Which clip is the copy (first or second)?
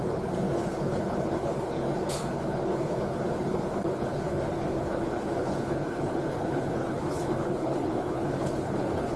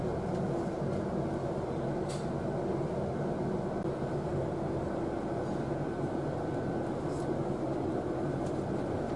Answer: first